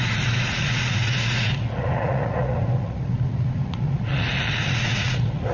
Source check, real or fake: fake